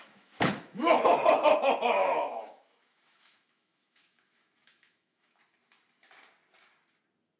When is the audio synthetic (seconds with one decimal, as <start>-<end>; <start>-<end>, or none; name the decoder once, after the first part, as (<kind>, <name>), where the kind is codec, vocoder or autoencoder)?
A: 0.0-1.0 (autoencoder, DAC-VAE); 2.0-5.4